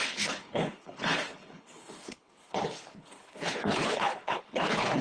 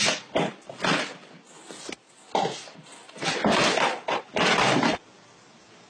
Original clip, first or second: second